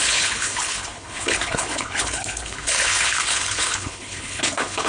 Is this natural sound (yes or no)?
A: no